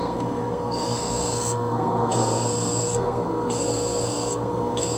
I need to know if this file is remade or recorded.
remade